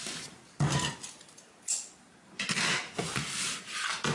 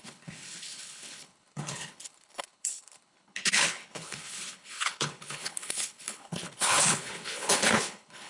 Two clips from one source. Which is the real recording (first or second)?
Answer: first